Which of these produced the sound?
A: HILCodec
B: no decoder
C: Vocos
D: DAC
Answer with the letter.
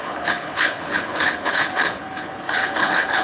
A